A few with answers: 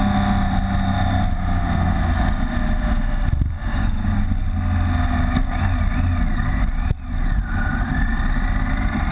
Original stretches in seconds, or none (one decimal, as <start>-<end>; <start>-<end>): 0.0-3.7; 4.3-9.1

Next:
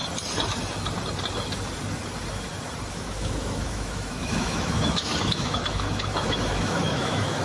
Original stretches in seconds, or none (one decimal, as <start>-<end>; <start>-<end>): 0.0-2.9

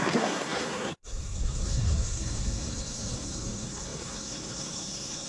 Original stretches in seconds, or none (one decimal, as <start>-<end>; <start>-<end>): none

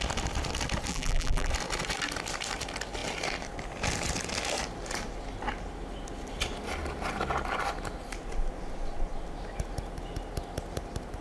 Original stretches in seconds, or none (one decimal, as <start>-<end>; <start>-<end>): 0.0-0.9; 1.5-11.2

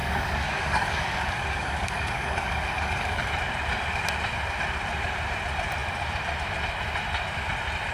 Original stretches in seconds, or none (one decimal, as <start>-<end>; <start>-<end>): 3.3-7.9

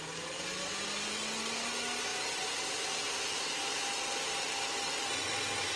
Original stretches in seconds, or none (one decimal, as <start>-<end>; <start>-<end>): 0.0-5.8

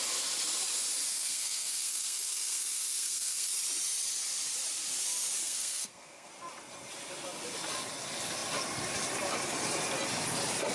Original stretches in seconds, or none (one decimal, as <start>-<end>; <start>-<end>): 0.0-1.1; 3.5-5.4; 6.3-10.7